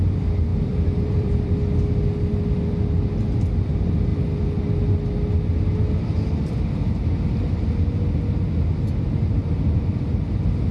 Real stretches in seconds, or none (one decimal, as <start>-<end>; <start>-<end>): 0.0-0.5; 1.5-10.7